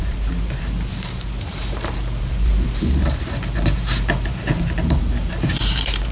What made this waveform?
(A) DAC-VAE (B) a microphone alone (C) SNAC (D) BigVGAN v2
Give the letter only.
D